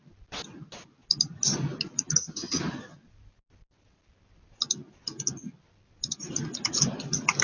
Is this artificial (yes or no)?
no